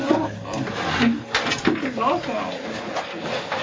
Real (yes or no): yes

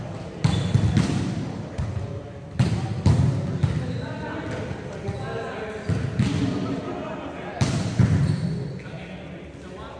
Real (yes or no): yes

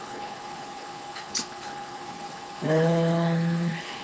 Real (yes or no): no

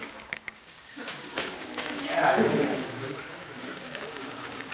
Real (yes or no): no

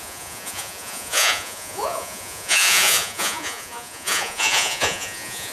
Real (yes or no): no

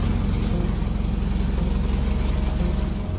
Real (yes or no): yes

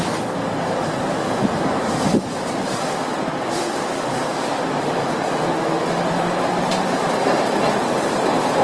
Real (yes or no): no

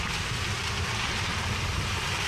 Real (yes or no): yes